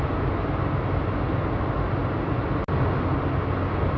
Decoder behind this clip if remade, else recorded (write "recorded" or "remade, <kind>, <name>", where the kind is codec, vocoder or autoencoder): recorded